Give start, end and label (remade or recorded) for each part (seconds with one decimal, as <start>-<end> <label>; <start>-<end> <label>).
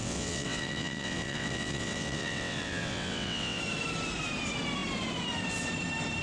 0.0-3.6 remade; 3.6-6.2 recorded